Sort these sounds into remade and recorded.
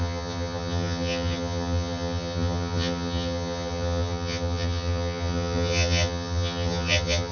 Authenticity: remade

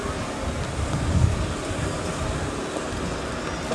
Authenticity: recorded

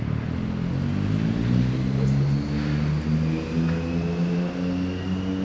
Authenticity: recorded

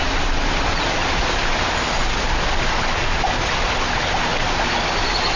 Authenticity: recorded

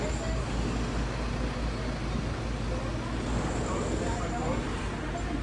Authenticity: recorded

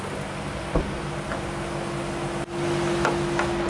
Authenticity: recorded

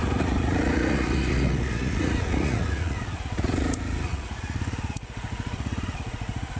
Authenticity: remade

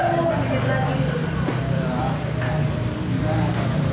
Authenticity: recorded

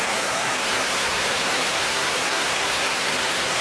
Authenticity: remade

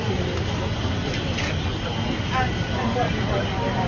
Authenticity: recorded